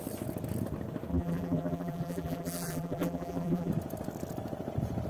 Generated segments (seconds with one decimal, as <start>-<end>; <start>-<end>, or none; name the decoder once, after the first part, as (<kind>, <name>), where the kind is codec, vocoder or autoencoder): 1.1-3.7 (vocoder, BigVGAN v2)